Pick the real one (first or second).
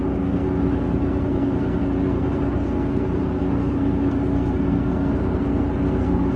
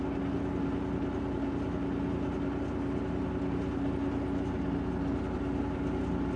second